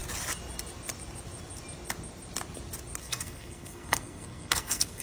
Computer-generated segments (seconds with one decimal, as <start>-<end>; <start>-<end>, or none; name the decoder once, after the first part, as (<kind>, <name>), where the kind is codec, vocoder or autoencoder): 3.0-5.0 (codec, SNAC)